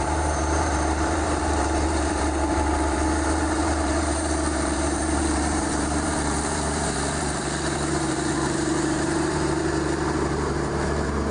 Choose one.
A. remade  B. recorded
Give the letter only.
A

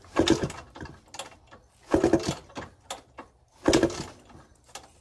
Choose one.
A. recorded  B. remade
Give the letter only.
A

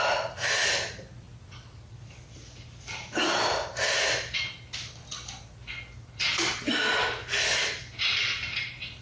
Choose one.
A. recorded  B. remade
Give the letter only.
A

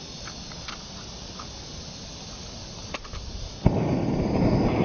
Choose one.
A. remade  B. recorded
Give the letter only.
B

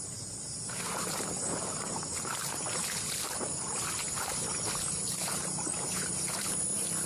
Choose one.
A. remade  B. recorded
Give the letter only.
A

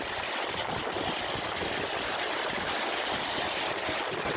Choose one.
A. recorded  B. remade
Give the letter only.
A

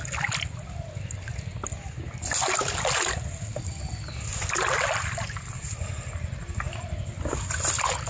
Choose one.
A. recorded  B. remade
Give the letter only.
A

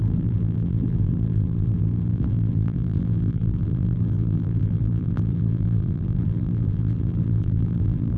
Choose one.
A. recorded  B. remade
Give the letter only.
B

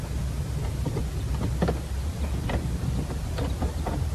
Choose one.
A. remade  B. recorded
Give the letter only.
B